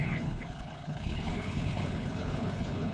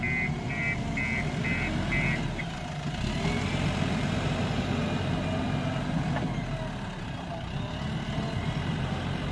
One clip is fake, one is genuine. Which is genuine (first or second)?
second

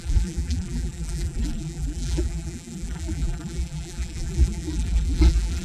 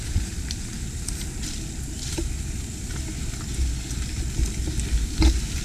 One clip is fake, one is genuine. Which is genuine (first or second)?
second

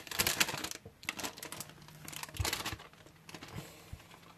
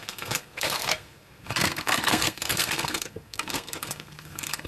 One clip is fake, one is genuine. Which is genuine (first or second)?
first